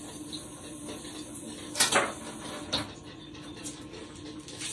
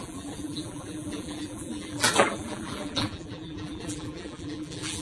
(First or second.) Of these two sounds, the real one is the first